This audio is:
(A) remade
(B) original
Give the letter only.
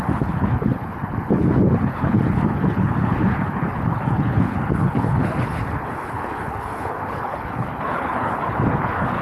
A